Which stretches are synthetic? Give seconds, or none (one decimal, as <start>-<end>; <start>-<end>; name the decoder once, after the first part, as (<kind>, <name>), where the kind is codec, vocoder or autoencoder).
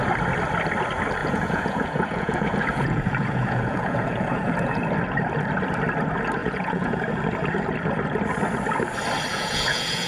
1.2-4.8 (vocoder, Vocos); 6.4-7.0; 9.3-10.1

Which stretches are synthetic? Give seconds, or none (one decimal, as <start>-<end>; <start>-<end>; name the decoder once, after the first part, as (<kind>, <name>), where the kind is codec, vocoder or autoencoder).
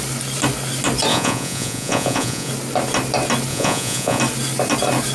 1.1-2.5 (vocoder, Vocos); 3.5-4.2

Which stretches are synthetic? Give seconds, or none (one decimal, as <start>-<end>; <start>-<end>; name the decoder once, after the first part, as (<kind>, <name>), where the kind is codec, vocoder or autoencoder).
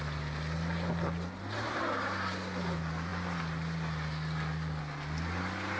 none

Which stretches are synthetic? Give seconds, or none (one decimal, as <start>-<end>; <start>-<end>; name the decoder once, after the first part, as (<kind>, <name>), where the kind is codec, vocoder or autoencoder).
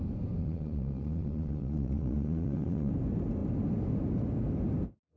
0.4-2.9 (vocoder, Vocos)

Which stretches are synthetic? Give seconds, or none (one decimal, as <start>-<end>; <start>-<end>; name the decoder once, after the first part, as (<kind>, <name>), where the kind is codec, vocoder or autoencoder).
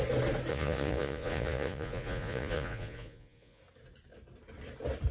0.5-3.6 (vocoder, Vocos)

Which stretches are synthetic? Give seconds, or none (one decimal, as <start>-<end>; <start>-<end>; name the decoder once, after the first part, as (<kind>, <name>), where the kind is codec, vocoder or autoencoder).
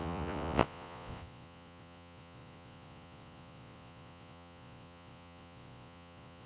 0.0-6.5 (vocoder, Vocos)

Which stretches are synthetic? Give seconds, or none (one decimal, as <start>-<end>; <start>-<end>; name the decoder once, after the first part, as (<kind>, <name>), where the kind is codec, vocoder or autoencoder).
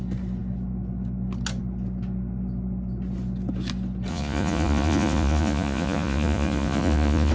4.1-7.3 (vocoder, Vocos)